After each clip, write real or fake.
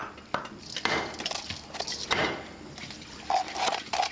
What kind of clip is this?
real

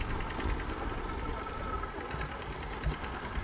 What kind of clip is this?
real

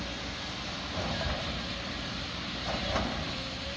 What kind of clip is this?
fake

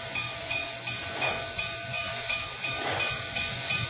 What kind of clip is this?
fake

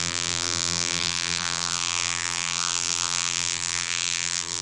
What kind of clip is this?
fake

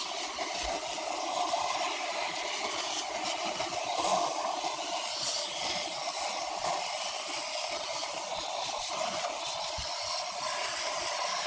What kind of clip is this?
real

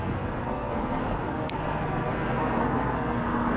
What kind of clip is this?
fake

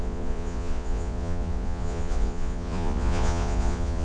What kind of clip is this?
fake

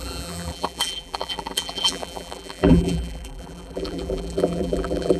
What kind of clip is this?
fake